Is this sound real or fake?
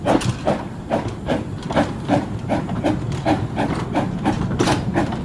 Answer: fake